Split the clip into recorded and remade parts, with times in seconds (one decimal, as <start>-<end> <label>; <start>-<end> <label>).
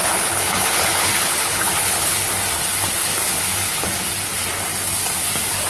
0.0-2.3 remade; 2.3-3.0 recorded; 3.0-4.1 remade; 4.1-5.7 recorded